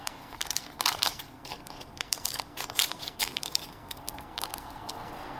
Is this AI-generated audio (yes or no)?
yes